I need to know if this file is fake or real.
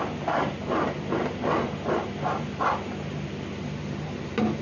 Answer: real